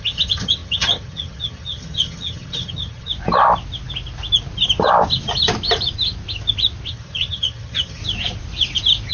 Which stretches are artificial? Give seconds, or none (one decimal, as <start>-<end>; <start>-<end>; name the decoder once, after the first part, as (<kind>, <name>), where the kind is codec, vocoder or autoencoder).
0.0-3.1 (vocoder, HiFi-GAN); 6.9-8.0